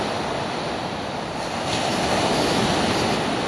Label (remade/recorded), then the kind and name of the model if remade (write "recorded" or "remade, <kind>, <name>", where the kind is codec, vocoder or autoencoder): recorded